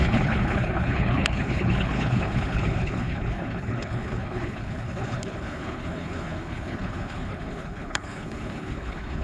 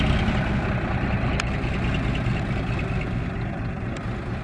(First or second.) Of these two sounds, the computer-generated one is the first